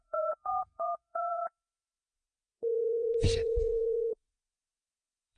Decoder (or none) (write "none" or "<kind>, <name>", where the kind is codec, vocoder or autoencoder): vocoder, Vocos